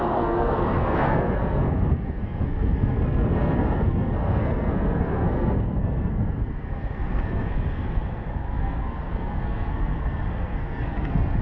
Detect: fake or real fake